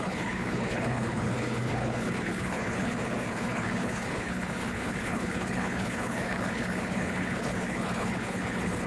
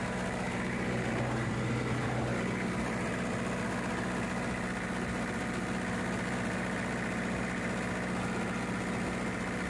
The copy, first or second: first